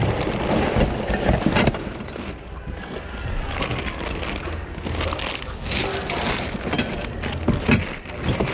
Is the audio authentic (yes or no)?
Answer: yes